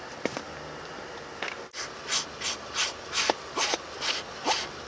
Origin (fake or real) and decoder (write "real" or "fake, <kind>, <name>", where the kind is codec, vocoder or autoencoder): real